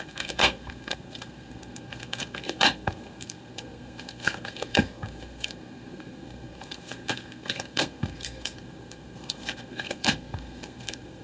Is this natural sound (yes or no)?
no